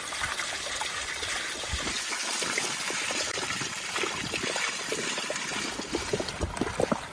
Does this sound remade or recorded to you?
recorded